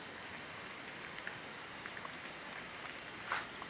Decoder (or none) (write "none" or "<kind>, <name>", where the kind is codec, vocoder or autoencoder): none